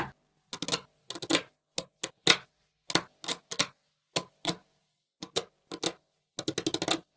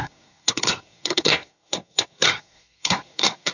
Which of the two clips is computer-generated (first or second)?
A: second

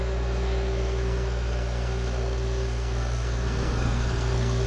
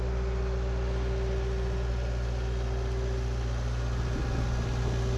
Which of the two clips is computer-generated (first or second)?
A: first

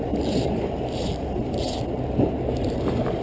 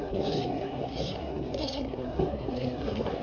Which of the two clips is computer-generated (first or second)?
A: second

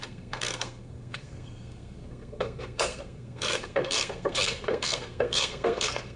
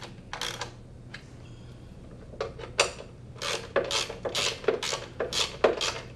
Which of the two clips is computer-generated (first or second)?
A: first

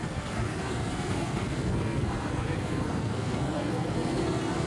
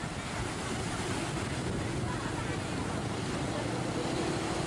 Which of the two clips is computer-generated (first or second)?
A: first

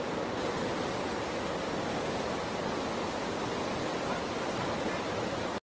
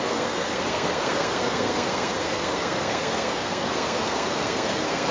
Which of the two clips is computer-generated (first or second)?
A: second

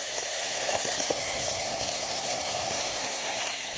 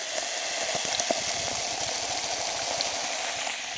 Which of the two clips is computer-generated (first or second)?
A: first